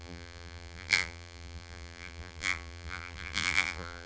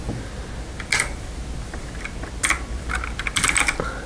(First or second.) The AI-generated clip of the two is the first